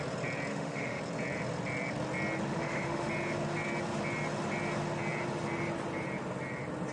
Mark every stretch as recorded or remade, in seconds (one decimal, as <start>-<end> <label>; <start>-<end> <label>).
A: 0.0-0.5 recorded; 0.5-1.0 remade; 1.0-2.5 recorded; 2.5-3.1 remade; 3.1-6.9 recorded